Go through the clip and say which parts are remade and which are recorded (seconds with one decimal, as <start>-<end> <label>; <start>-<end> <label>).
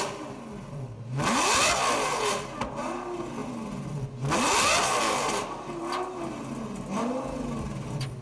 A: 0.0-8.2 recorded